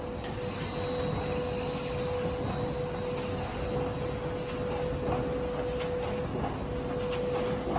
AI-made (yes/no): no